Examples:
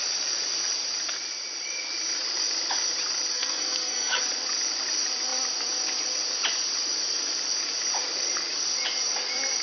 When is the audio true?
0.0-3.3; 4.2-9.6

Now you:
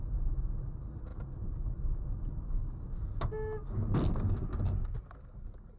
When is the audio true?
0.0-5.8

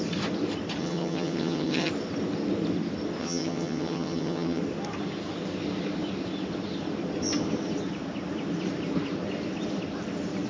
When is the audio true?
0.0-0.8; 1.9-3.2; 4.6-10.5